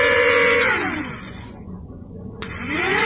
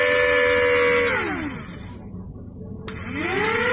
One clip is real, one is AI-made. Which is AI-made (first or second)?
first